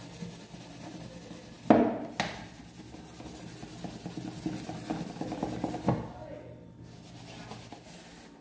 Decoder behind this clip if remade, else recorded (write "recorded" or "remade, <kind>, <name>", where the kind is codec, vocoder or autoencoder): recorded